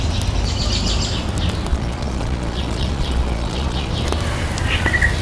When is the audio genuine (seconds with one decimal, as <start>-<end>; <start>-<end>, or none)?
0.0-1.7; 3.9-5.2